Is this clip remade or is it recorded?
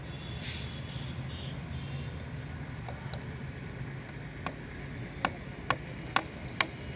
recorded